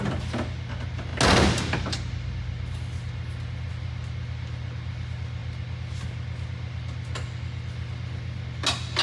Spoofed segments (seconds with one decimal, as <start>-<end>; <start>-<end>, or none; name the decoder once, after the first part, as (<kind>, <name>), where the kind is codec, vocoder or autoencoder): none